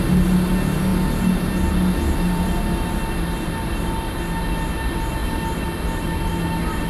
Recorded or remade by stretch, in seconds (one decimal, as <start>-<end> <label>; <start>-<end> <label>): 0.0-6.9 recorded